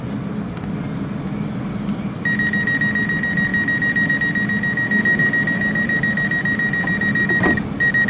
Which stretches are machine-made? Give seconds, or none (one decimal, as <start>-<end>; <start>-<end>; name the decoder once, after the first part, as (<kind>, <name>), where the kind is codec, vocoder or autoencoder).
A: none